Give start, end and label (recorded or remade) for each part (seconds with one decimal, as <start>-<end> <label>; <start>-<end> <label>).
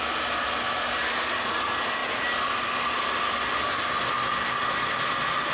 0.0-5.5 recorded